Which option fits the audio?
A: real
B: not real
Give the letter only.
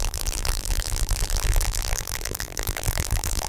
B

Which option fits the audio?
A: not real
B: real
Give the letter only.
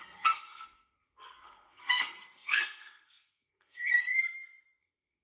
A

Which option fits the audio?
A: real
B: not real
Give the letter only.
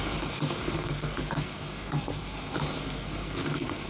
B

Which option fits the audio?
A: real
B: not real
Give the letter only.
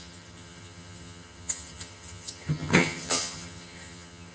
B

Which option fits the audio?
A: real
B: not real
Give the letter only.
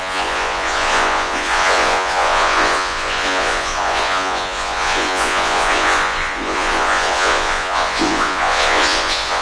B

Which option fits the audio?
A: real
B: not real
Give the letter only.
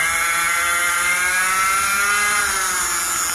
A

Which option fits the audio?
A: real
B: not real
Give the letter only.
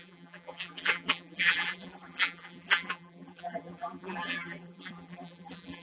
B